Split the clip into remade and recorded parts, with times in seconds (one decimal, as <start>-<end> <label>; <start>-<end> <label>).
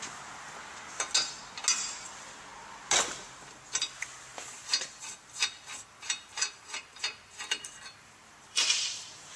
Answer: 0.0-4.3 recorded; 4.3-9.4 remade